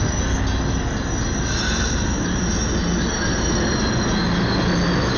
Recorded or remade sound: recorded